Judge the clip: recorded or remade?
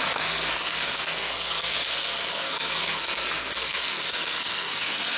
remade